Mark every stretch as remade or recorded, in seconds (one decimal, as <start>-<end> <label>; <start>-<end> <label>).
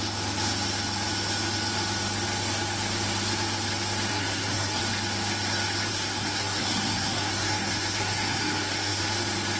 0.0-4.1 recorded; 4.1-4.8 remade; 4.8-5.9 recorded; 5.9-9.0 remade; 9.0-9.6 recorded